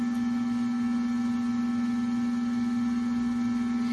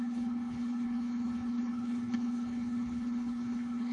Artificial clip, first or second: second